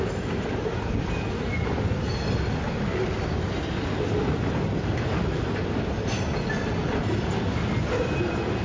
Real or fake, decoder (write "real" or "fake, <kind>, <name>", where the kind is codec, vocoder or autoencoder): real